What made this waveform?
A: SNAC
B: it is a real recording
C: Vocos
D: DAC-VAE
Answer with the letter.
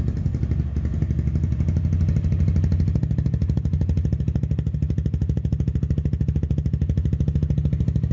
B